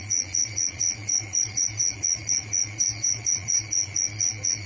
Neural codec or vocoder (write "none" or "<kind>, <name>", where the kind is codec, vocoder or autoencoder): vocoder, Vocos